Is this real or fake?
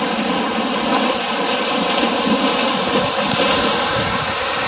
real